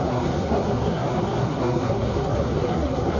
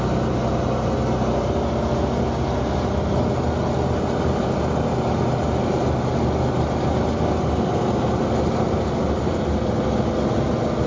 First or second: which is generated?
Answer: first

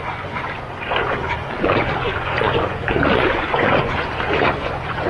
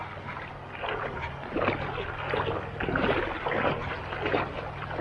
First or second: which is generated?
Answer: first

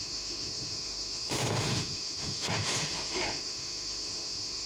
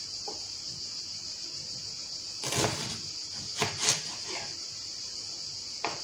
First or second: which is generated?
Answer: first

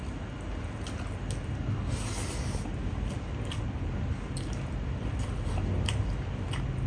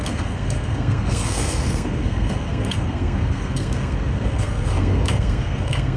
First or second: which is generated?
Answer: second